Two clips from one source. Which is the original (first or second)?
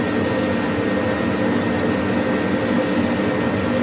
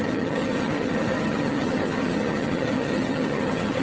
first